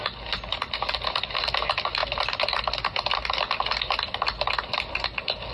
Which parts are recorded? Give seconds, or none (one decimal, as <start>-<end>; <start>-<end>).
0.0-5.5